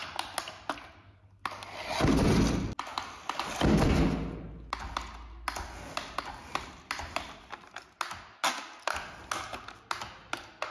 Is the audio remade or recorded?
recorded